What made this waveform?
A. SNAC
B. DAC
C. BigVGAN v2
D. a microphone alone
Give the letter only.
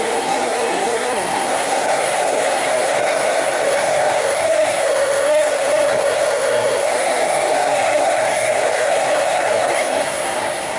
A